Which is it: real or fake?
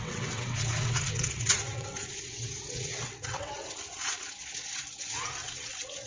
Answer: fake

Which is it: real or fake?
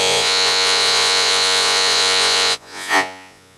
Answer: fake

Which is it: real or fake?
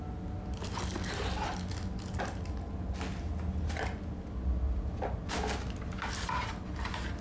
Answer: real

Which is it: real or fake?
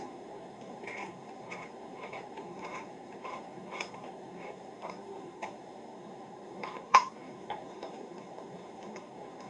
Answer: fake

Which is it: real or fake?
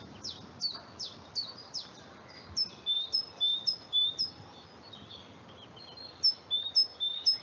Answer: real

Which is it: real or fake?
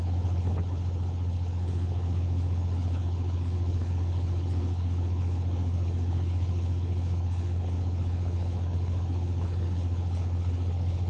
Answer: fake